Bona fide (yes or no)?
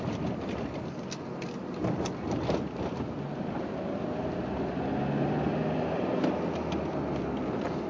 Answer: yes